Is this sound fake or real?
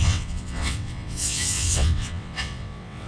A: fake